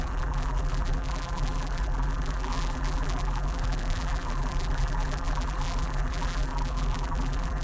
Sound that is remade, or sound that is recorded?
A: remade